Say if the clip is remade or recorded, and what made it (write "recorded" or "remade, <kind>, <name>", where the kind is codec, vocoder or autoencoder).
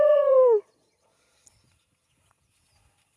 remade, vocoder, Vocos